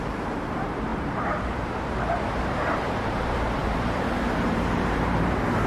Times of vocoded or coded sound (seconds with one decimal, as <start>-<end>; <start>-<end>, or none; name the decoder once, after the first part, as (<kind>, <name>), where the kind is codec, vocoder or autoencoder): 0.0-5.7 (vocoder, BigVGAN v2)